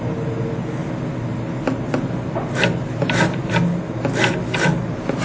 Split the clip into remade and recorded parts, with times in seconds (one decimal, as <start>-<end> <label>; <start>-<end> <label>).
0.0-5.2 recorded